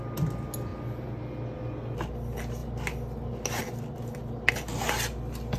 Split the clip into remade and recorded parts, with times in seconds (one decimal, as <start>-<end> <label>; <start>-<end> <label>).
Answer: 0.0-5.6 recorded